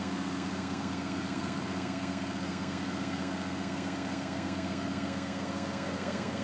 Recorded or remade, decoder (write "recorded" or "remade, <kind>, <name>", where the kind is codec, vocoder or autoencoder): remade, codec, SNAC